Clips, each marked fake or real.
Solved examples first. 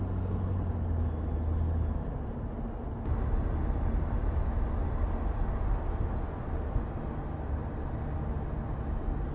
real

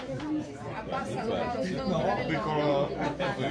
real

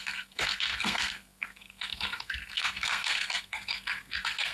fake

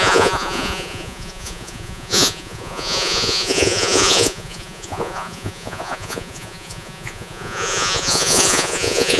fake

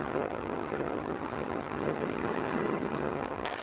fake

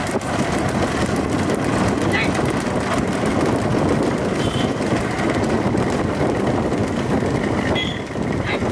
real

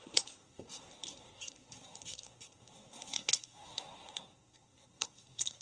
fake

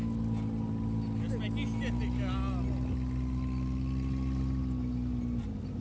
real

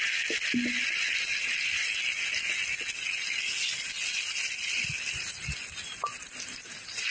real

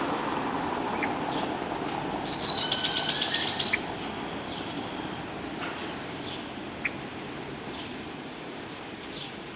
real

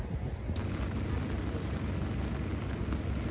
real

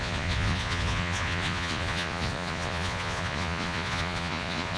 fake